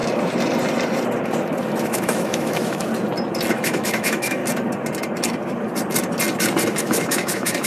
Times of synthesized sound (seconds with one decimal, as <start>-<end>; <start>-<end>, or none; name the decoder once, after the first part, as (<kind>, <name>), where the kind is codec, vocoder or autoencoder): 1.8-2.9 (autoencoder, DAC-VAE); 3.5-4.4; 6.8-7.7